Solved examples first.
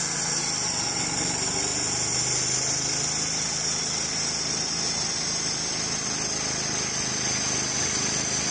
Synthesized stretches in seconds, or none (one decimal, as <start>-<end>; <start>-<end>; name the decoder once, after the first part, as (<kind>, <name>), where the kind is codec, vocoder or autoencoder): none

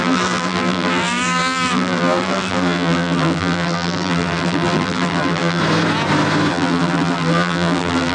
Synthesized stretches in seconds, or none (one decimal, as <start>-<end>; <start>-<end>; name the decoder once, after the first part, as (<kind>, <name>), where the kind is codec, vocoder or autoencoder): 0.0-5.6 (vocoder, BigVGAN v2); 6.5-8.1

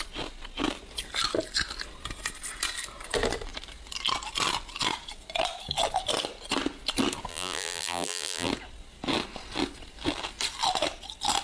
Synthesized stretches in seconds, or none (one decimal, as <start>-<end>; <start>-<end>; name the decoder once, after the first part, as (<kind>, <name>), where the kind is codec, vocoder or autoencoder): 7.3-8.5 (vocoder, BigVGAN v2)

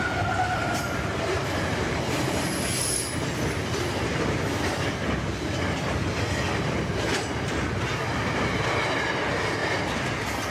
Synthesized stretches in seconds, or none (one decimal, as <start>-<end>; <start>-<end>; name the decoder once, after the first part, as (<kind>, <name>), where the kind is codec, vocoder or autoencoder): 0.6-3.3 (vocoder, BigVGAN v2)

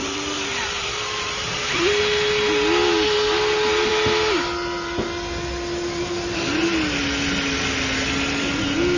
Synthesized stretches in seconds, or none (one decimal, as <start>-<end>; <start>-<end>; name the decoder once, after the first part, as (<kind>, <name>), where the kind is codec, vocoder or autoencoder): 0.0-2.0 (vocoder, BigVGAN v2)

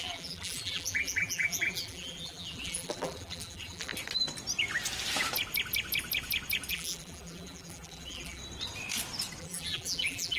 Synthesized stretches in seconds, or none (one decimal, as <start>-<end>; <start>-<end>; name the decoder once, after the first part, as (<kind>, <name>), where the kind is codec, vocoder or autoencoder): 0.0-3.9 (vocoder, BigVGAN v2); 6.7-8.4; 9.4-10.4